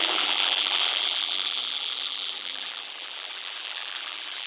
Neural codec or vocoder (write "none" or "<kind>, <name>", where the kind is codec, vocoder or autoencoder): vocoder, BigVGAN v2